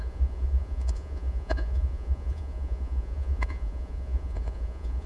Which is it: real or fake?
fake